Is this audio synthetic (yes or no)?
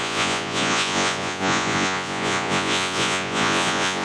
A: yes